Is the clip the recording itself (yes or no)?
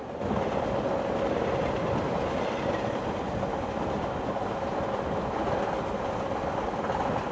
yes